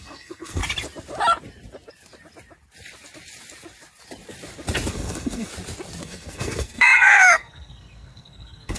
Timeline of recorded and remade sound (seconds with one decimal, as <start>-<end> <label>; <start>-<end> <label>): 0.0-0.6 remade; 0.6-4.9 recorded; 4.9-5.5 remade; 5.5-6.0 recorded; 6.0-8.8 remade